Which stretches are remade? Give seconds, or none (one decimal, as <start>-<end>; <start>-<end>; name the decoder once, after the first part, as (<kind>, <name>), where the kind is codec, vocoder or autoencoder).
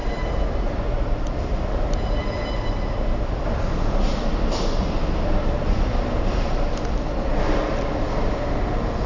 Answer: 0.0-4.3 (vocoder, BigVGAN v2)